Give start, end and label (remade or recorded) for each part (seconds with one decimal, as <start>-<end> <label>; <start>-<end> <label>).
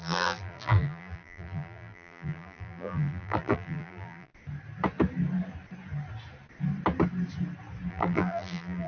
0.0-4.3 remade; 4.3-7.9 recorded; 7.9-8.9 remade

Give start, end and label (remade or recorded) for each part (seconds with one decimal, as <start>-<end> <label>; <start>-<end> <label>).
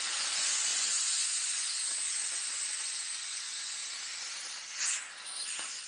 0.0-3.8 remade; 3.8-5.9 recorded